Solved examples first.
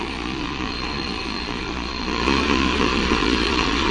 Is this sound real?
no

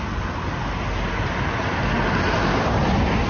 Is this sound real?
yes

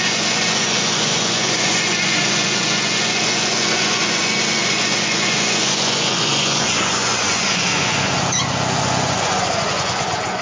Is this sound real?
no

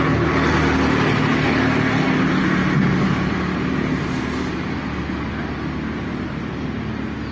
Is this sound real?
yes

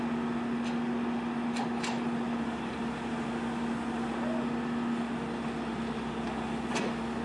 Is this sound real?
yes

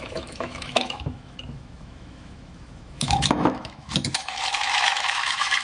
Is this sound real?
no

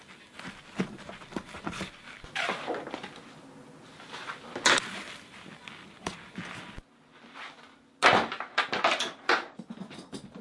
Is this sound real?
yes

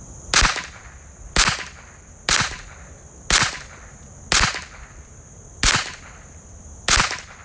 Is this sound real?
yes